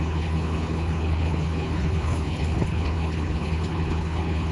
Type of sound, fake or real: fake